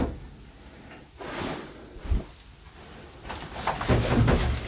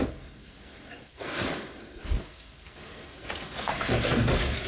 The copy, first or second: second